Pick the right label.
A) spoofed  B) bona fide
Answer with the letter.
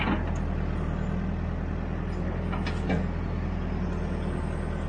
B